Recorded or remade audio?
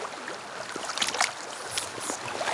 recorded